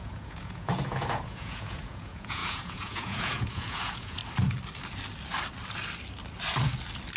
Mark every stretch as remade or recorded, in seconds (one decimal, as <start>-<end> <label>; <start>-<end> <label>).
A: 0.0-4.2 remade; 4.2-7.2 recorded